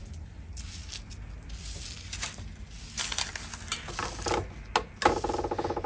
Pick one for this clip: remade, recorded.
recorded